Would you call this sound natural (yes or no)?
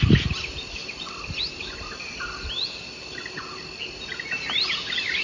yes